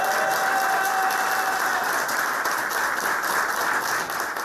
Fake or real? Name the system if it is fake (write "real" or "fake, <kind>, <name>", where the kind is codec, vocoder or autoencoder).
real